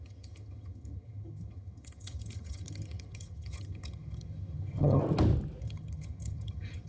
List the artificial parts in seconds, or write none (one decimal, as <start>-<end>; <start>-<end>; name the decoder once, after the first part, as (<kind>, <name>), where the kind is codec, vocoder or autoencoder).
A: 0.0-5.0 (vocoder, HiFi-GAN); 5.6-6.9